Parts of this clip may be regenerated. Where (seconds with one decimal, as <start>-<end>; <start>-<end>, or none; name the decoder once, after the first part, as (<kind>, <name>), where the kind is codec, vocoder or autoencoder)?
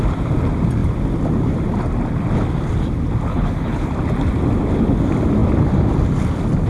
3.3-3.9 (codec, HILCodec)